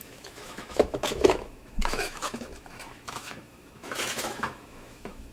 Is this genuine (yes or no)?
no